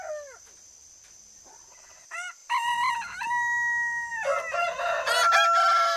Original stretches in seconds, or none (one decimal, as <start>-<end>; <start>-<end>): 0.0-6.0